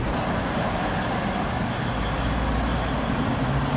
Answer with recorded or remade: recorded